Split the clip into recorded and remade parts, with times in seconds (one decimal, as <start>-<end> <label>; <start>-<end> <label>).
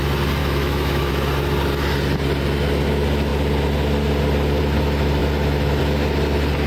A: 0.0-0.4 recorded; 0.4-1.1 remade; 1.1-6.7 recorded